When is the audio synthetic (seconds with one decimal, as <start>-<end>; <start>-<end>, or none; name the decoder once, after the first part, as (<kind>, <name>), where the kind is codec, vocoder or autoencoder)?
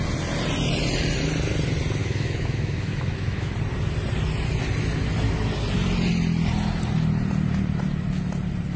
2.0-3.5 (autoencoder, DAC-VAE)